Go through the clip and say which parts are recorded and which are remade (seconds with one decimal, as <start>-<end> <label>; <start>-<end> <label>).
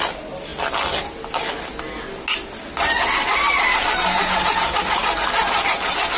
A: 0.0-6.2 recorded